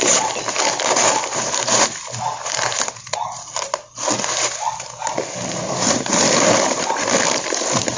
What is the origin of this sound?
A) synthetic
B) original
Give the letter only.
A